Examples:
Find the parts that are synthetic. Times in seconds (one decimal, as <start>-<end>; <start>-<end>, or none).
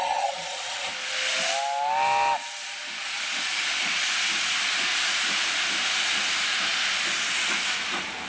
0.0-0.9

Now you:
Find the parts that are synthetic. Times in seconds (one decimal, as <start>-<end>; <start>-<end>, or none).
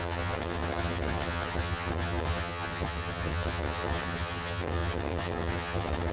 0.0-6.1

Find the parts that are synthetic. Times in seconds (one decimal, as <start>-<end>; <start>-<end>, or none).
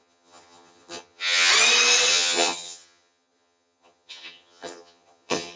0.0-1.5; 2.1-5.6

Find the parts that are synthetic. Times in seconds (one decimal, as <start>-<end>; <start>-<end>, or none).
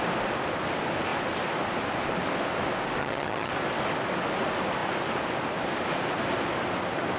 3.0-3.5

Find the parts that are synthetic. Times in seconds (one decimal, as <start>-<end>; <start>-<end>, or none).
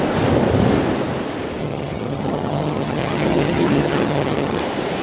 1.6-4.6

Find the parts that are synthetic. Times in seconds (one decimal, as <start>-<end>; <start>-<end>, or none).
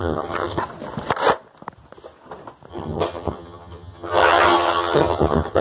0.0-0.6; 2.7-5.6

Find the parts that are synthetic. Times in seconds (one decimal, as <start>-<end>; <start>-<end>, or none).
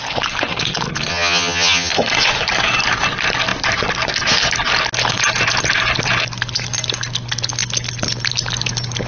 1.1-1.9